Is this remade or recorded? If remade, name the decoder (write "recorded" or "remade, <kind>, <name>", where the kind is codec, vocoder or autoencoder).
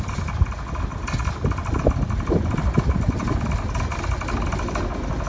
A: recorded